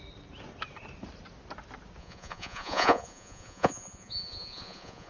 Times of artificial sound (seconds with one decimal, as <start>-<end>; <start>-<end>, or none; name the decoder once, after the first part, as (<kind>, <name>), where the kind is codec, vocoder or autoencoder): 2.0-5.1 (vocoder, Vocos)